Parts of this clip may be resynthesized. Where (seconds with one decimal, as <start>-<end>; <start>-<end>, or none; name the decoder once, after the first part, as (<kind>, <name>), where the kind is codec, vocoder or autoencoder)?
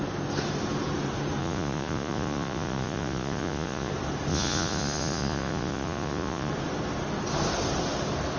1.4-3.9 (vocoder, Vocos); 4.3-6.5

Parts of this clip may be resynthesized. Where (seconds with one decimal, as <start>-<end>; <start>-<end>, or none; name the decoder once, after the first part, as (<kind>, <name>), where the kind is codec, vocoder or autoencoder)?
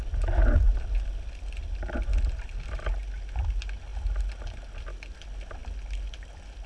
none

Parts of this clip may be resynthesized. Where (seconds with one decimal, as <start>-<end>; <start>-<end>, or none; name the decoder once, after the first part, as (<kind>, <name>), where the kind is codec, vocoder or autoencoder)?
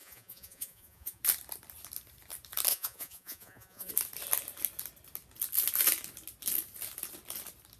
0.0-1.2 (vocoder, Vocos); 2.7-3.9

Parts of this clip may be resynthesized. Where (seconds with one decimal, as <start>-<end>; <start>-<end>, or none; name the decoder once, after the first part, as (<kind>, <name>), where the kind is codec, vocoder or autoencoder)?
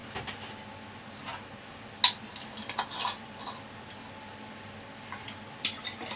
none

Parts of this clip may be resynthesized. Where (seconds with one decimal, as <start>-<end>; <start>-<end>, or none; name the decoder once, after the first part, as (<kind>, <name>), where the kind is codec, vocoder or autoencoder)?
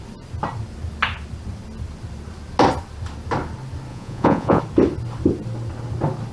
3.9-4.6 (vocoder, Vocos)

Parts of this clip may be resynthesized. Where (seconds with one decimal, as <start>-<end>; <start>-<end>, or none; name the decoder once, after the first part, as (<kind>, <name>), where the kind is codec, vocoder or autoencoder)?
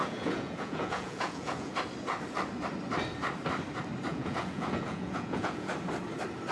0.0-1.7 (vocoder, Vocos); 4.1-5.7